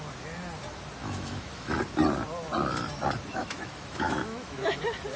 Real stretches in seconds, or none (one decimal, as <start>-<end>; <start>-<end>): 0.0-1.0; 1.8-3.3; 4.8-5.2

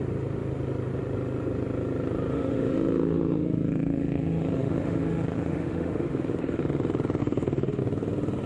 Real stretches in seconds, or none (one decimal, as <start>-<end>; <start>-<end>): 0.0-2.3; 6.6-7.2; 7.8-8.5

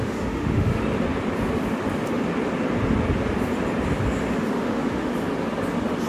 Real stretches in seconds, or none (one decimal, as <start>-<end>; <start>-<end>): 0.8-4.5; 5.1-6.1

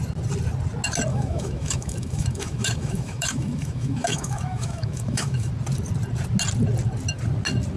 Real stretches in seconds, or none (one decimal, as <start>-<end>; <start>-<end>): 0.0-1.1; 5.5-7.8

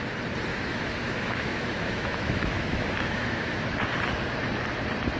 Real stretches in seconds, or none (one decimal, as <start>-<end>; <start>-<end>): 0.0-0.5; 3.6-5.2

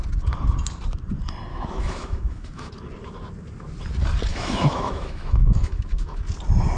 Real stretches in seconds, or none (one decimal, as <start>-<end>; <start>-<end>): 0.0-1.5; 2.7-4.3; 6.2-6.8